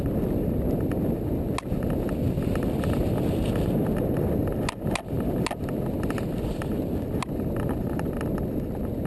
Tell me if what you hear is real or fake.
real